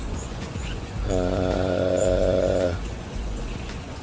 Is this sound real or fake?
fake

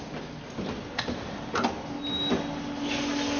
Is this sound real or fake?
real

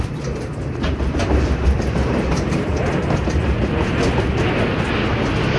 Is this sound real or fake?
real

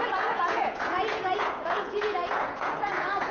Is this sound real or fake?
fake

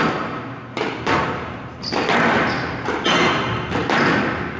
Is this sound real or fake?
real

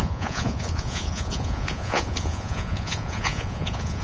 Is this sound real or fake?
fake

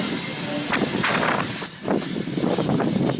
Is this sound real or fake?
real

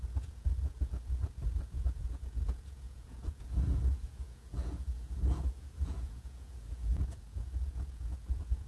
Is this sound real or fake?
fake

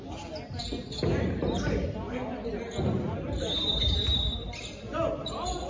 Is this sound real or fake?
real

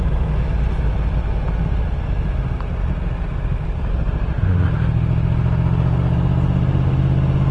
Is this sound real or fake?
real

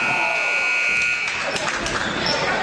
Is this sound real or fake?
real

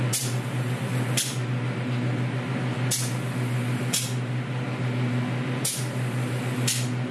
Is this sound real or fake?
real